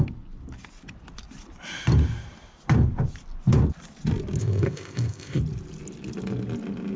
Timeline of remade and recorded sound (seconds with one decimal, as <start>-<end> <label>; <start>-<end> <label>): 0.0-4.4 recorded; 4.4-5.4 remade; 5.4-7.0 recorded